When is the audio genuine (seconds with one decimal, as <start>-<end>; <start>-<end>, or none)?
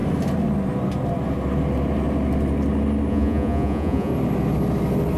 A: 0.0-3.1; 4.1-5.2